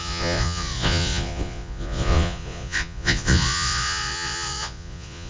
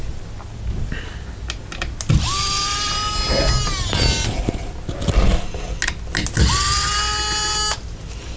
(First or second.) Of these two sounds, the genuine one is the second